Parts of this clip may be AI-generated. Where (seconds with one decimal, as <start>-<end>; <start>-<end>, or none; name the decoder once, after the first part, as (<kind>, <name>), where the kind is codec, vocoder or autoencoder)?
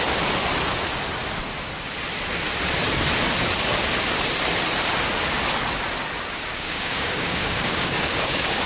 6.5-8.7 (codec, DAC)